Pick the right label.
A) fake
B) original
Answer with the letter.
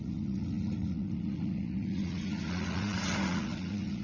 A